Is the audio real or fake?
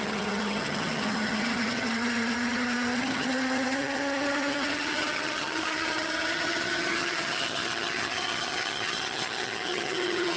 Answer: fake